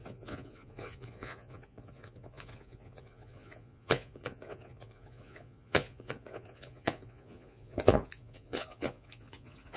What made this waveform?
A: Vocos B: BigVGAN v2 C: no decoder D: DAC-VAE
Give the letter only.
A